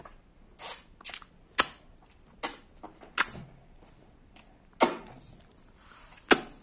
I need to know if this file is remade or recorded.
recorded